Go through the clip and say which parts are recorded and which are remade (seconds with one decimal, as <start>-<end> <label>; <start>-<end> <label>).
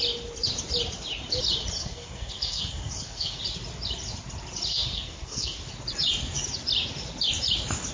0.0-1.8 recorded; 1.8-3.4 remade; 3.4-4.7 recorded; 4.7-5.6 remade; 5.6-7.9 recorded